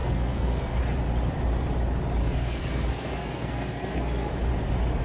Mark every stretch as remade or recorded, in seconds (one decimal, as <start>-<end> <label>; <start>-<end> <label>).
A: 0.0-0.8 remade; 0.8-2.2 recorded; 2.2-4.3 remade; 4.3-5.0 recorded